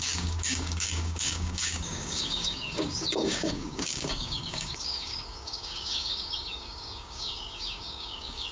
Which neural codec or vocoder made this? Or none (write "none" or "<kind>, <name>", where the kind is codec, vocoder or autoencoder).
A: codec, DAC